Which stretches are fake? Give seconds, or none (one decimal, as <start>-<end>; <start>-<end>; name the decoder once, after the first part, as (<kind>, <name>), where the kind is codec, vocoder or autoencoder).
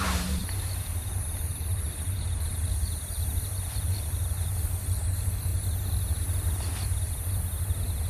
0.0-5.5 (vocoder, BigVGAN v2)